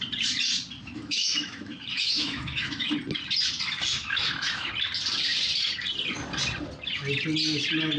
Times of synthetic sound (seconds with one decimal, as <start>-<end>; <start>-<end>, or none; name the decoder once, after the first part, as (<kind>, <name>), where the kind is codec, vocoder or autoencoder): 0.8-2.9 (autoencoder, DAC-VAE); 3.9-4.7